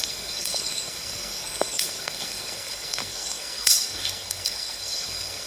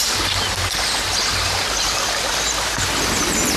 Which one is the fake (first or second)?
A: first